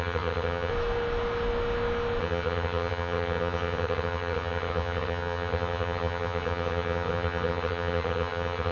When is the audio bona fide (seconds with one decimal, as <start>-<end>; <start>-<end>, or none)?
0.7-2.2